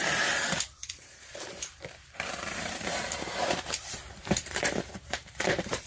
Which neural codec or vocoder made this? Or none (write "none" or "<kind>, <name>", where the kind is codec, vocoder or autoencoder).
vocoder, BigVGAN v2